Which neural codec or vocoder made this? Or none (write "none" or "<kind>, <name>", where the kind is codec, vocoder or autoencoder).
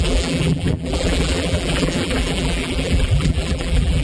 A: vocoder, BigVGAN v2